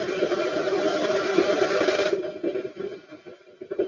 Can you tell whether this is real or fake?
real